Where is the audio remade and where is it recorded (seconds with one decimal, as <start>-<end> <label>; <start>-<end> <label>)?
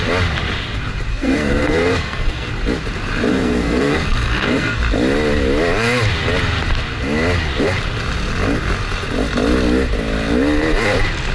0.0-1.1 recorded; 1.1-2.5 remade; 2.5-3.3 recorded; 3.3-4.8 remade; 4.8-11.3 recorded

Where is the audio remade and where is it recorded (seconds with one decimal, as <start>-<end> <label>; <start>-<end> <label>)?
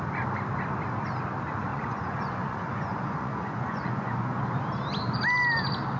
0.0-1.7 recorded; 1.7-4.4 remade; 4.4-6.0 recorded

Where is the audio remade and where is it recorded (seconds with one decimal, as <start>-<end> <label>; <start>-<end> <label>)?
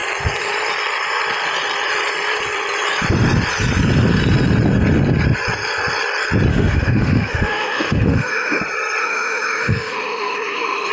0.0-6.5 recorded; 6.5-8.6 remade; 8.6-9.0 recorded; 9.0-10.9 remade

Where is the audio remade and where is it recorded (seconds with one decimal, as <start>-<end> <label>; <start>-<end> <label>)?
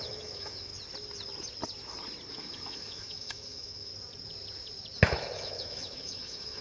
0.0-0.7 remade; 0.7-2.3 recorded; 2.3-3.9 remade; 3.9-5.1 recorded; 5.1-6.6 remade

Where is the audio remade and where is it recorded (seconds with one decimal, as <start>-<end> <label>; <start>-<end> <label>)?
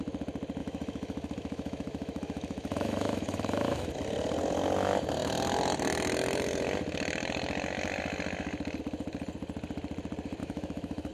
0.0-0.6 recorded; 0.6-3.9 remade; 3.9-10.4 recorded; 10.4-11.1 remade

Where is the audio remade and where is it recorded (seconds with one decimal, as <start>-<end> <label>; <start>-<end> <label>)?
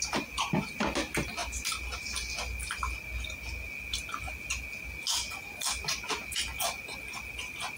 0.0-7.8 recorded